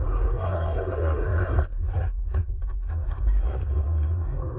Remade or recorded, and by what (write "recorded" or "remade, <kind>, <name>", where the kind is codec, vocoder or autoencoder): remade, codec, SNAC